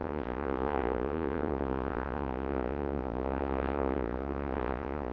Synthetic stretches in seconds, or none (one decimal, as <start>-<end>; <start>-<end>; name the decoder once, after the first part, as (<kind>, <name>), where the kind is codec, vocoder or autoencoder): 0.0-5.1 (vocoder, Vocos)